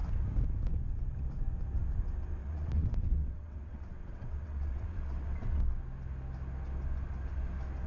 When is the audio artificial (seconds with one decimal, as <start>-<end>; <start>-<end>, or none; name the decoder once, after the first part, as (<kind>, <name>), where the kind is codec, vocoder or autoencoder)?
2.4-5.6 (vocoder, WaveNeXt)